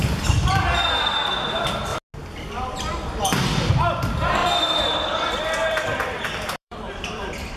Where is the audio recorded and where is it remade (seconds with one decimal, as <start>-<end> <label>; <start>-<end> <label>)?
0.0-1.9 remade; 1.9-3.7 recorded; 3.7-7.6 remade